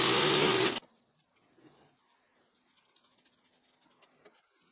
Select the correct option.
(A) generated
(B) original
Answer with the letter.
B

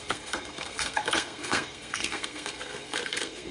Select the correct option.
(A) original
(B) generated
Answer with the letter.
B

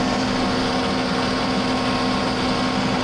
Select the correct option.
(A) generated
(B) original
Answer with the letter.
B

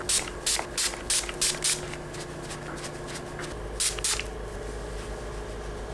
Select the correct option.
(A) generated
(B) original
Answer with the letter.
B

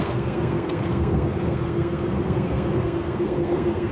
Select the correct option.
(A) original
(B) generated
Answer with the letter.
B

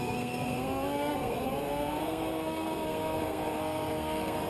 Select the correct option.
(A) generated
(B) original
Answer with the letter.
A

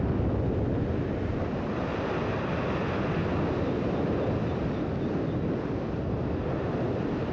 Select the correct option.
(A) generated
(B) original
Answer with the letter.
B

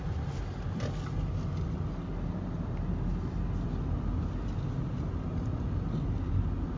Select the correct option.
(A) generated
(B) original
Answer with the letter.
B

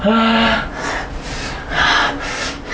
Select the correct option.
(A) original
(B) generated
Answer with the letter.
A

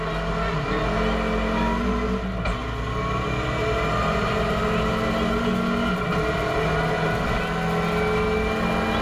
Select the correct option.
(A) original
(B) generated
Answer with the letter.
A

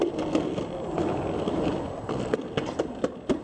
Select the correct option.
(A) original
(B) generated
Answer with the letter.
A